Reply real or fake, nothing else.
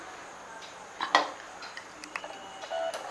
real